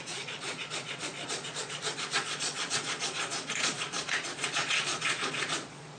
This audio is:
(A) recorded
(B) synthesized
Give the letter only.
B